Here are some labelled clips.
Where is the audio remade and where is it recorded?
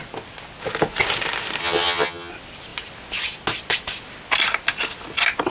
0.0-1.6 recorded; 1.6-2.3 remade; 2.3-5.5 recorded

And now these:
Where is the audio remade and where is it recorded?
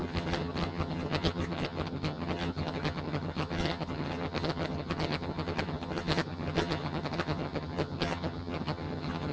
0.0-9.3 remade